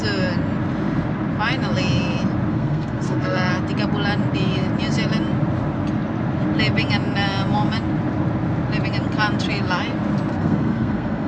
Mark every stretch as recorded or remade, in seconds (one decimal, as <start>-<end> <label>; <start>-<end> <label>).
0.0-2.5 recorded; 2.5-3.5 remade; 3.5-10.3 recorded; 10.3-11.3 remade